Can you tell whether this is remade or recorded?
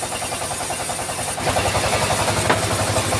recorded